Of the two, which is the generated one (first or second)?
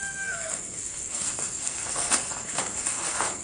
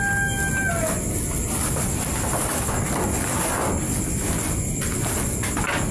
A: first